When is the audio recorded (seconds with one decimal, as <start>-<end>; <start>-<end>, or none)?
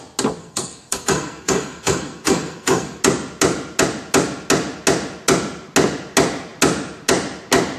0.0-0.4; 3.0-7.8